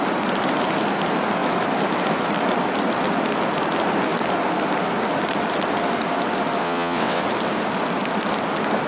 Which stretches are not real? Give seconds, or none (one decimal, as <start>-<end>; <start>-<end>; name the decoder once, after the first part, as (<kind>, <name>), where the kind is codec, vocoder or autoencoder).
6.6-7.2 (vocoder, WaveNeXt)